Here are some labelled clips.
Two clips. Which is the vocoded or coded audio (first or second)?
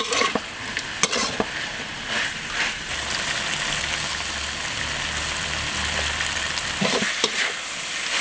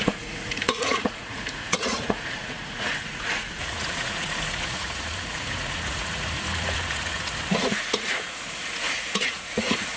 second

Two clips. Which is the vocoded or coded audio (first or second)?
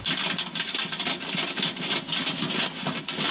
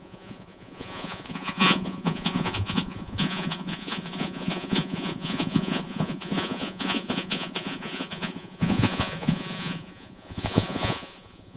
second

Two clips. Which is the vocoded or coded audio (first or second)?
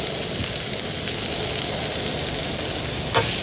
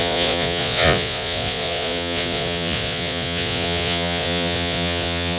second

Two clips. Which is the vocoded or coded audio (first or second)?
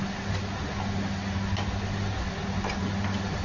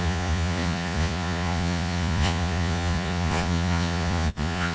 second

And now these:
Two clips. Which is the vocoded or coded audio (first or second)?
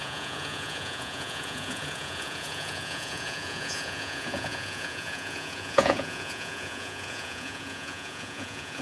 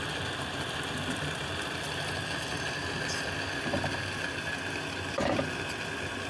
first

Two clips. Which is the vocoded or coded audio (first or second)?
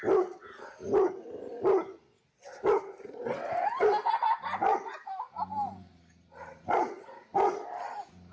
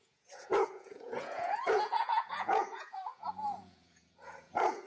second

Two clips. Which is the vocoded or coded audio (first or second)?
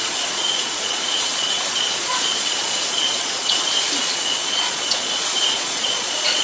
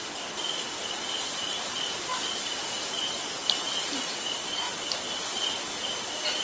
first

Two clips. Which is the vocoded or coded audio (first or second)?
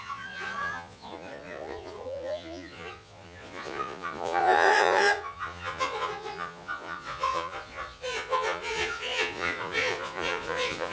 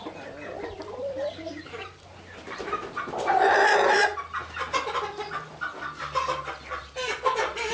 first